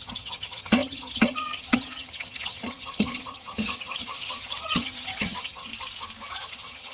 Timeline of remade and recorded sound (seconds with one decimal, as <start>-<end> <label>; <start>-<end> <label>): 0.0-5.7 remade; 5.7-6.3 recorded; 6.3-6.9 remade